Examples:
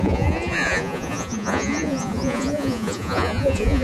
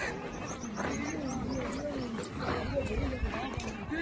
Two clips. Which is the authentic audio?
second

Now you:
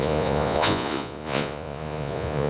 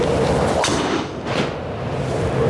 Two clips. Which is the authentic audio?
second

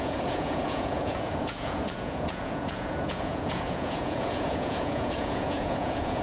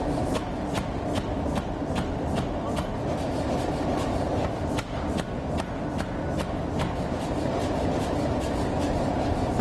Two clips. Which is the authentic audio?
second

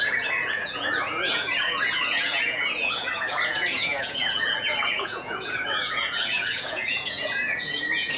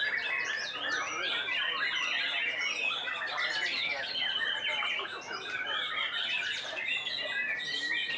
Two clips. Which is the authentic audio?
second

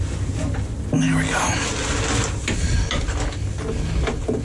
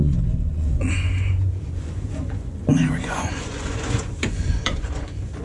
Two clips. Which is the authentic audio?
first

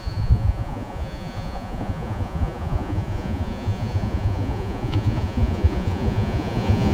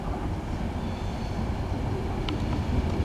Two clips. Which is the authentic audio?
second